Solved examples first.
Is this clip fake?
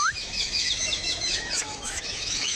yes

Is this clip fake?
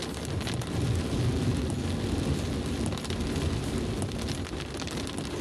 no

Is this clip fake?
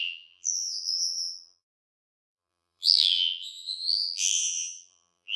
yes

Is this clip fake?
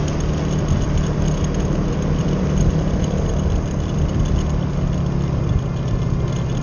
no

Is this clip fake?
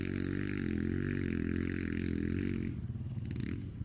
no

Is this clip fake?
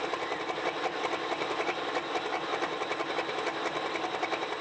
no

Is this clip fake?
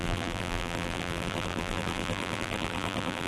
yes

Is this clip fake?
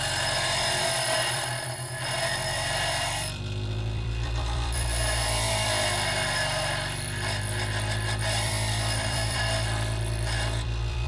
yes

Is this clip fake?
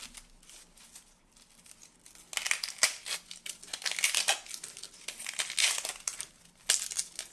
no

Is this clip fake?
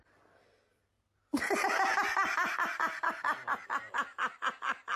no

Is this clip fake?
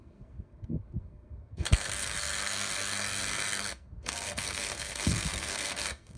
yes